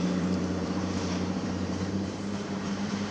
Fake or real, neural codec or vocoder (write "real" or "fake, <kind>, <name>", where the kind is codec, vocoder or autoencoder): fake, vocoder, BigVGAN v2